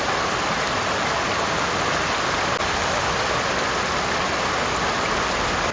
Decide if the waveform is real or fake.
real